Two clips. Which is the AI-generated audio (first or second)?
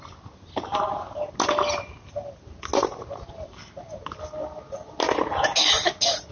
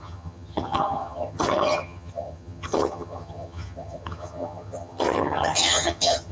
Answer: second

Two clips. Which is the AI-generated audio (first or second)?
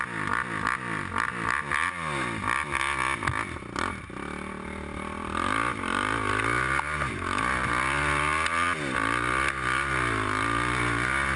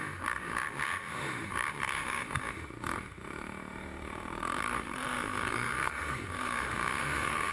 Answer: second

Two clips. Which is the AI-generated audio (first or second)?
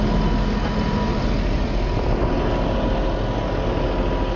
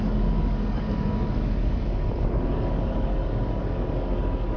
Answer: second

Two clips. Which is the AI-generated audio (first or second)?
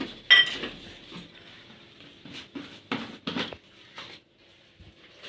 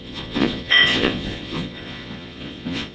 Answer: second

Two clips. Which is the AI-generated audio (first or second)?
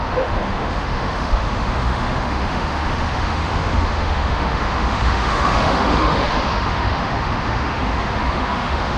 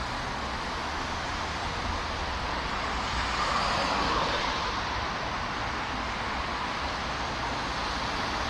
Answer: first